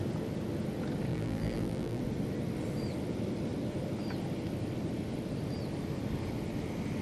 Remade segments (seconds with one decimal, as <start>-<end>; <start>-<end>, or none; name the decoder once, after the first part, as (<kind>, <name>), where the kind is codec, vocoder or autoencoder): 1.1-2.0 (vocoder, BigVGAN v2)